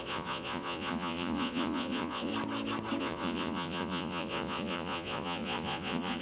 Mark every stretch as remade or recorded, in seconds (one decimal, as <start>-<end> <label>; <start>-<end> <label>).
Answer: 0.0-2.3 remade; 2.3-3.0 recorded; 3.0-6.2 remade